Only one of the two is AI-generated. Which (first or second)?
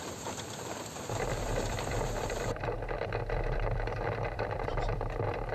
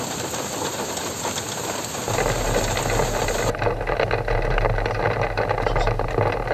first